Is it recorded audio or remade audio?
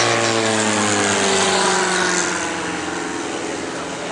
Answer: recorded